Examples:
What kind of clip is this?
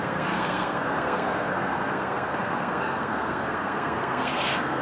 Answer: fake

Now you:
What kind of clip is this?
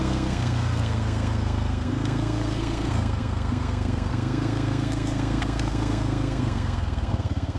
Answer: fake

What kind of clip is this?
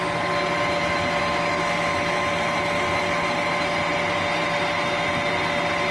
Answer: real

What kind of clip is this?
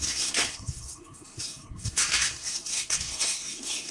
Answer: fake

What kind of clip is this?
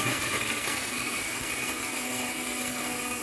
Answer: fake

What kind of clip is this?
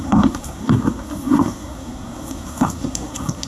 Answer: fake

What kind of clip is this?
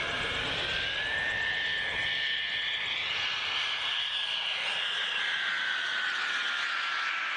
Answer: real